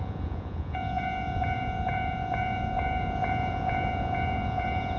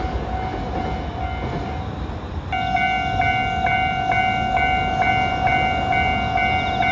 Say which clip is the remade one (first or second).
first